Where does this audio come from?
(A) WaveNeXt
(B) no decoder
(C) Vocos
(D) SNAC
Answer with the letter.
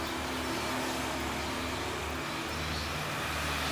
B